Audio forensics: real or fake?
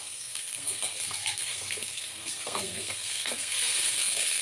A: fake